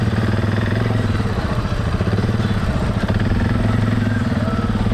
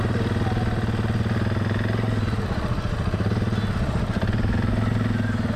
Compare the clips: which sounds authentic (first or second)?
second